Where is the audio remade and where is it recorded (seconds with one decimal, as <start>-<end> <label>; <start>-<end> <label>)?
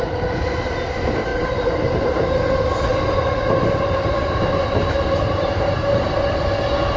0.0-1.3 recorded; 1.3-2.3 remade; 2.3-2.9 recorded; 2.9-6.1 remade; 6.1-7.0 recorded